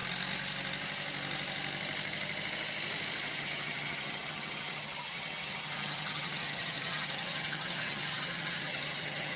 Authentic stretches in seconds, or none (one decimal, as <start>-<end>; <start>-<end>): 0.0-3.4